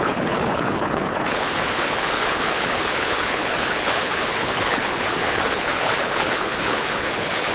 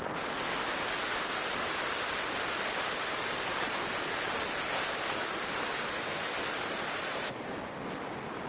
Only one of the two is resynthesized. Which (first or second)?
first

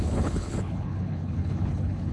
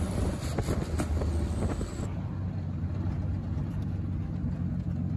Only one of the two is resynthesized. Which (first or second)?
first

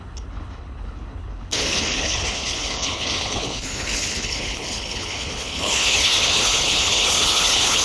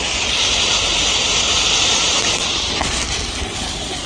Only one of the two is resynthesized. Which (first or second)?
first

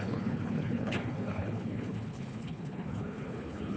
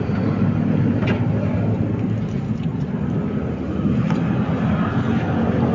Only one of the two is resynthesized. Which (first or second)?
first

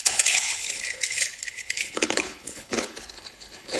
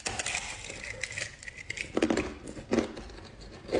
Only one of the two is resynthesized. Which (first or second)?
first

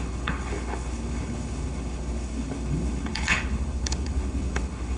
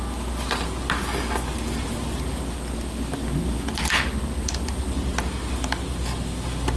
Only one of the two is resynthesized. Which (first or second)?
first